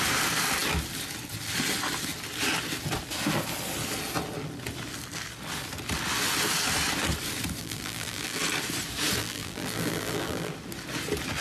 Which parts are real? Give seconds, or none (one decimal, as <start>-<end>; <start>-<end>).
0.0-7.6; 8.4-9.2; 10.5-11.4